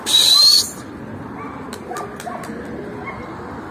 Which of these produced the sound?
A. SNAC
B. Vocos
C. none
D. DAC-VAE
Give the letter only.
C